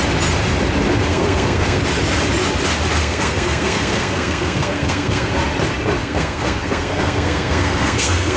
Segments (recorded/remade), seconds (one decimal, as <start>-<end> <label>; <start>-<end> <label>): 0.0-1.1 recorded; 1.1-1.8 remade; 1.8-3.0 recorded; 3.0-5.3 remade; 5.3-6.0 recorded; 6.0-8.4 remade